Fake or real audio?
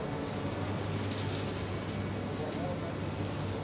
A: real